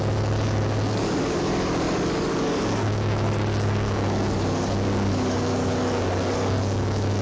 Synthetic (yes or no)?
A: yes